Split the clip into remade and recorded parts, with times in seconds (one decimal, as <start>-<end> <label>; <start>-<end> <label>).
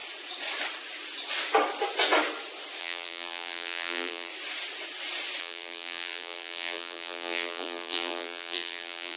0.0-2.8 recorded; 2.8-4.3 remade; 4.3-5.4 recorded; 5.4-9.2 remade